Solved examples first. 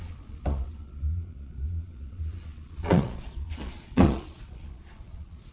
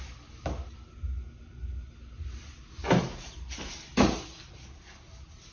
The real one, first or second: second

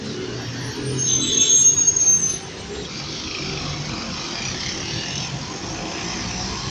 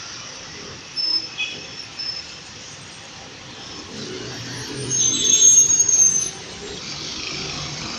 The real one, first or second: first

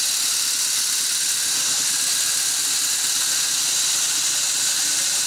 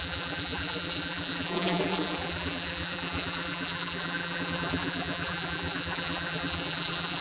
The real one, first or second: first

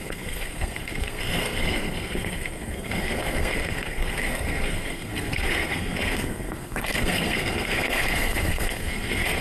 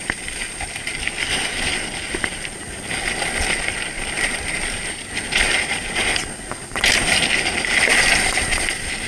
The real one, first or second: second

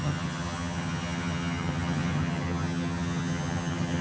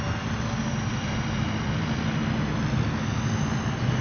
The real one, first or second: second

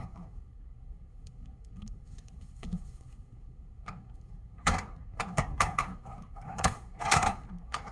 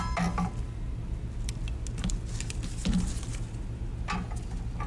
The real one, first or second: second